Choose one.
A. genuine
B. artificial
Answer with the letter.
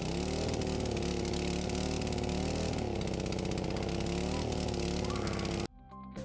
A